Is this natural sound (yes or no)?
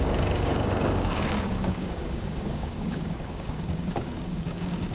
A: no